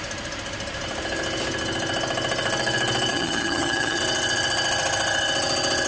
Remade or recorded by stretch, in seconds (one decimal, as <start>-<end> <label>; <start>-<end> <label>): 0.0-3.1 recorded; 3.1-4.0 remade; 4.0-5.9 recorded